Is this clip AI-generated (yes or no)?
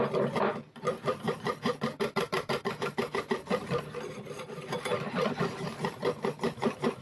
yes